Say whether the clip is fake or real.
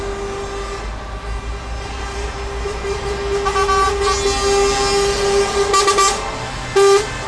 real